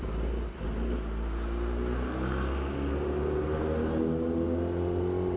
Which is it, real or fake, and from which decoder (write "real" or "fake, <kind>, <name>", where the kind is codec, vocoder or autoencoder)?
real